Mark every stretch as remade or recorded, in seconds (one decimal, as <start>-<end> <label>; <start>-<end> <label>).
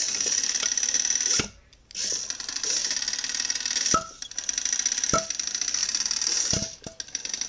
0.0-7.5 recorded